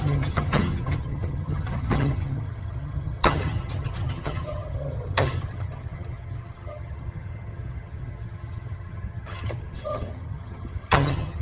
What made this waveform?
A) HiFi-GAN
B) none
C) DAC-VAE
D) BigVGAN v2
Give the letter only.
A